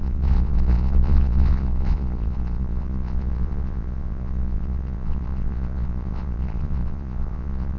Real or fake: fake